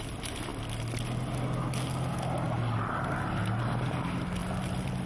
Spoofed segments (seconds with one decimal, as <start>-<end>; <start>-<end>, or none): 0.0-0.5; 3.6-4.4